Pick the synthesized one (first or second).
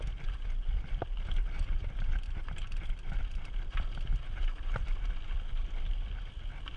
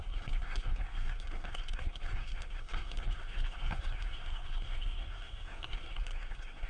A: second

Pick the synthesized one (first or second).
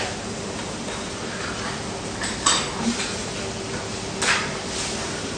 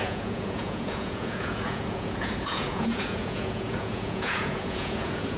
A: second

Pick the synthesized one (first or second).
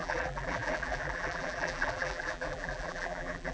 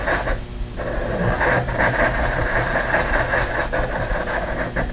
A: first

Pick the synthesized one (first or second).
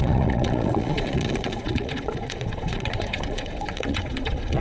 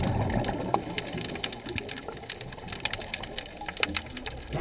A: first